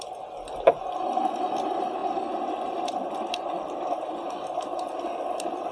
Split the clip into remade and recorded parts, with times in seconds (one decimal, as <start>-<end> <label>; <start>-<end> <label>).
0.0-5.7 recorded